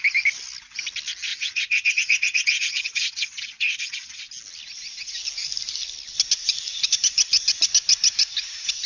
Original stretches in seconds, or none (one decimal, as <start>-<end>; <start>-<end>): 0.0-1.3; 4.3-8.9